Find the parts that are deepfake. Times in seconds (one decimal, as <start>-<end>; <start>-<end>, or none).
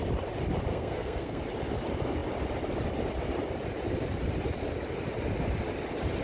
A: 0.7-1.4